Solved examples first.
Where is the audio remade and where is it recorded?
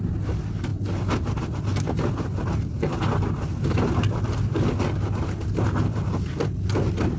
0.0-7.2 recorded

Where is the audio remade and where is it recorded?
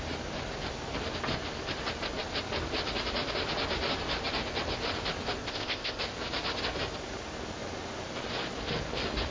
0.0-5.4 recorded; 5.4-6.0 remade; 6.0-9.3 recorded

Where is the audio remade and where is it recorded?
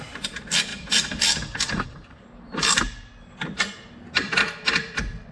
0.0-0.7 recorded; 0.7-2.8 remade; 2.8-5.3 recorded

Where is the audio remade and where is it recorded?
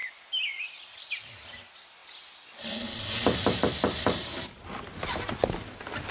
0.0-6.1 recorded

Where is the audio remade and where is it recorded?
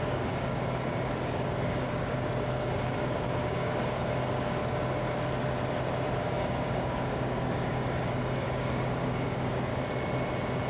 0.0-4.6 remade; 4.6-6.2 recorded; 6.2-9.7 remade; 9.7-10.7 recorded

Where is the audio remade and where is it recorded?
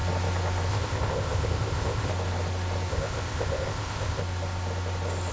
0.0-0.7 recorded; 0.7-2.1 remade; 2.1-2.9 recorded; 2.9-4.2 remade; 4.2-5.3 recorded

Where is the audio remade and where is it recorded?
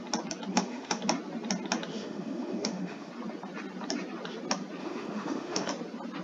0.0-0.5 recorded; 0.5-1.0 remade; 1.0-1.9 recorded; 1.9-3.1 remade; 3.1-4.8 recorded; 4.8-5.7 remade; 5.7-6.2 recorded